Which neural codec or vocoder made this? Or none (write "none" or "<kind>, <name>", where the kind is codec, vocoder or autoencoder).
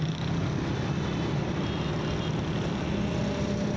none